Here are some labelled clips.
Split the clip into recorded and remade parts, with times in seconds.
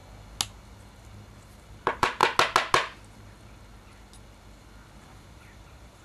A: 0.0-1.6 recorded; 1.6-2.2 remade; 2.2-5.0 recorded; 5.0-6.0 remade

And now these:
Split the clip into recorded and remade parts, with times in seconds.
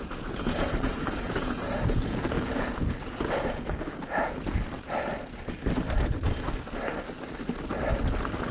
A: 0.0-5.1 remade; 5.1-8.5 recorded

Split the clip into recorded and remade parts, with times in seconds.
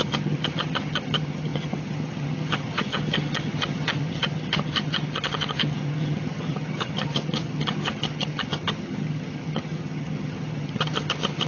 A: 0.0-11.5 remade